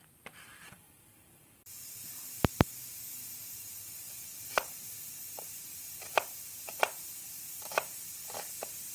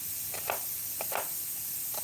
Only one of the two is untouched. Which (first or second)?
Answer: second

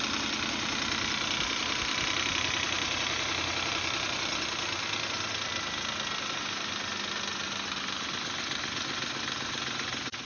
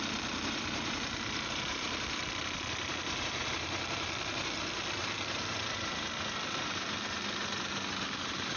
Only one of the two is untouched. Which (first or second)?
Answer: first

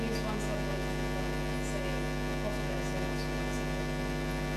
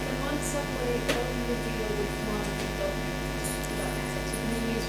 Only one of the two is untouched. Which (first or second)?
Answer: first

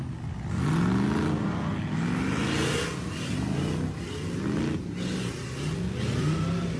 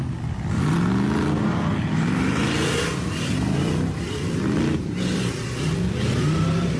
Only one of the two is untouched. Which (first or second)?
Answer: first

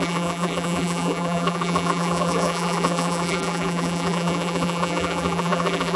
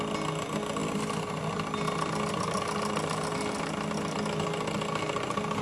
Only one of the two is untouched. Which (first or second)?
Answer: second